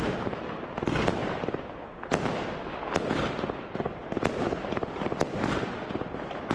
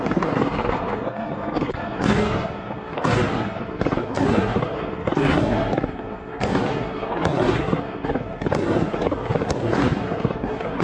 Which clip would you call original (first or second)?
first